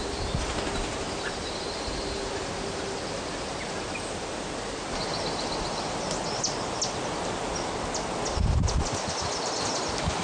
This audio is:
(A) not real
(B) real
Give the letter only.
B